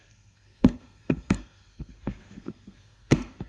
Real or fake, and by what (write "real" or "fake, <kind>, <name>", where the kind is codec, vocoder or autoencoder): fake, codec, SNAC